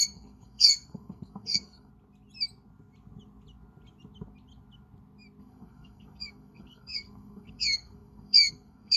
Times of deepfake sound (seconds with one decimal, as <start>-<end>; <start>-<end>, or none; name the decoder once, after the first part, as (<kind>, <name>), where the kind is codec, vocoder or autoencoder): 0.0-1.9 (codec, SNAC); 5.4-9.0